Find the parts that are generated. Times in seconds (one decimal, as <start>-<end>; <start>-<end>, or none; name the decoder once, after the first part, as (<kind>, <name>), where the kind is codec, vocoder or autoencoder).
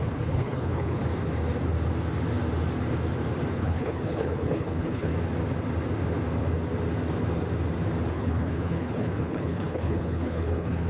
0.0-1.0 (codec, HILCodec); 3.5-5.1; 8.1-10.9